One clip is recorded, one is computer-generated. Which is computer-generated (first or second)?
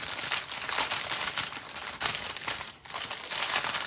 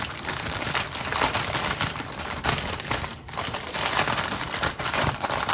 second